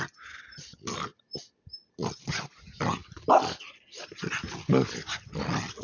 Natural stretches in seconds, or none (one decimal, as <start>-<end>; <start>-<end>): 0.0-5.8